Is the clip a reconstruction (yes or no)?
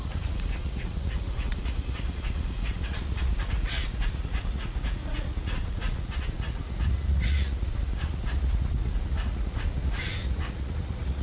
yes